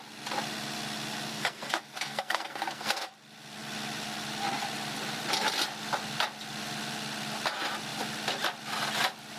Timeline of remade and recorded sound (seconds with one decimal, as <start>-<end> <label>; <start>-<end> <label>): 0.0-1.3 recorded; 1.3-3.1 remade; 3.1-9.4 recorded